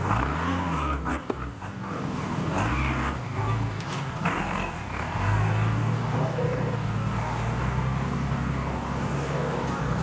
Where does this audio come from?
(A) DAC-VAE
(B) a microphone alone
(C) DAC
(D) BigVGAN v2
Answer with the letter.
C